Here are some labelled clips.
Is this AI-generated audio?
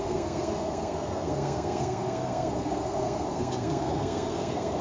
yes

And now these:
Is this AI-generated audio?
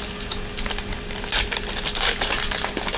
no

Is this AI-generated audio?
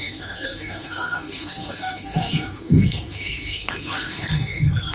yes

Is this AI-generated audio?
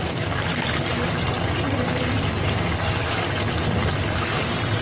no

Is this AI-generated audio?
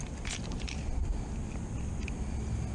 no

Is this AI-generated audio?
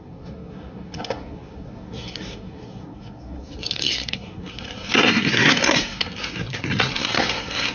yes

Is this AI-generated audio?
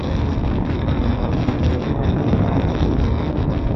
yes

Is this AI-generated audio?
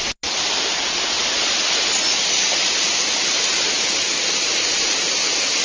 no